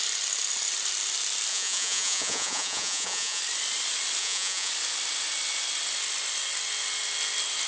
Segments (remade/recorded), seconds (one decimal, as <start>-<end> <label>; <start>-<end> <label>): 0.0-1.5 recorded; 1.5-3.4 remade; 3.4-4.2 recorded; 4.2-4.7 remade; 4.7-7.7 recorded